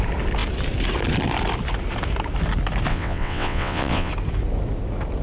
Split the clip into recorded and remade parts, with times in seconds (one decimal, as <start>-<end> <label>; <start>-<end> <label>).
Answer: 0.0-2.9 recorded; 2.9-4.1 remade; 4.1-5.2 recorded